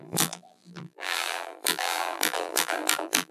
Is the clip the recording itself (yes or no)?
no